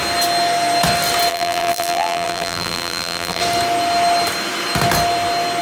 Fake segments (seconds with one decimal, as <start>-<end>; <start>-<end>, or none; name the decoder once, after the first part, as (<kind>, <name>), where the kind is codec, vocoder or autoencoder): 1.3-3.4 (vocoder, BigVGAN v2)